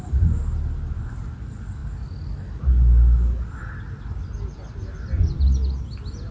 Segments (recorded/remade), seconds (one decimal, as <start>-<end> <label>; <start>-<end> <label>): 0.0-6.3 recorded